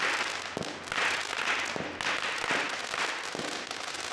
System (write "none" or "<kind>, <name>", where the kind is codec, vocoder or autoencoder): none